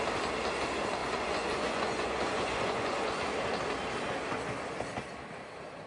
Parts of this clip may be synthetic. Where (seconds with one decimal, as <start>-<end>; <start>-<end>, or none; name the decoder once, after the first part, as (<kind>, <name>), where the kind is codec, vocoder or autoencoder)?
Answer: 1.0-3.2 (vocoder, Vocos)